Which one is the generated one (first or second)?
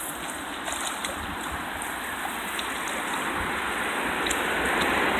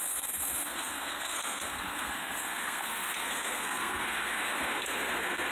second